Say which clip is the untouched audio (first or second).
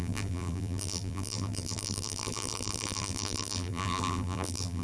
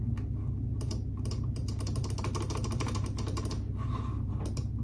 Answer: second